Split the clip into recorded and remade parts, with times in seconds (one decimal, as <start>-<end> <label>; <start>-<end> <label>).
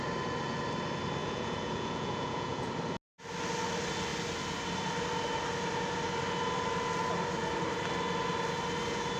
0.0-1.2 recorded; 1.2-2.7 remade; 2.7-9.2 recorded